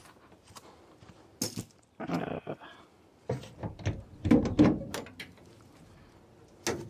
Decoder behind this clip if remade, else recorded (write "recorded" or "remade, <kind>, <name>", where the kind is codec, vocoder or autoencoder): recorded